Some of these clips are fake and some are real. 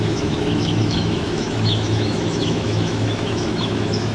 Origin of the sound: fake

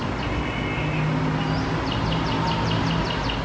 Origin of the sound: real